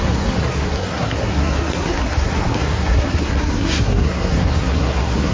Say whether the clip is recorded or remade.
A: remade